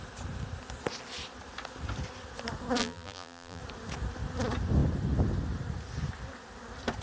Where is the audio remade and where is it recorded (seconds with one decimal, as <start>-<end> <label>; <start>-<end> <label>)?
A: 0.0-2.8 recorded; 2.8-3.6 remade; 3.6-7.0 recorded